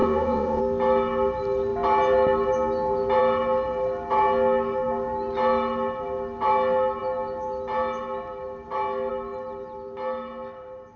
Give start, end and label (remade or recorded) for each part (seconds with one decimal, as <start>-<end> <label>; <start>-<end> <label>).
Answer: 0.0-0.6 remade; 0.6-11.0 recorded